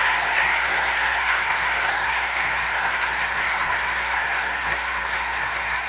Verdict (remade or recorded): remade